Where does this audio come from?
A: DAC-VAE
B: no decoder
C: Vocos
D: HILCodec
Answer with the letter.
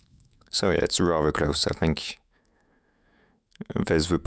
A